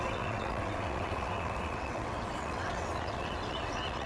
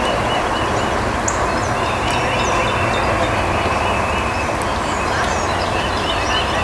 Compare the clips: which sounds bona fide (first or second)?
second